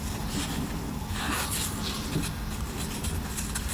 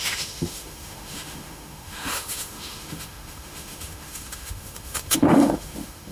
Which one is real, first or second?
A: first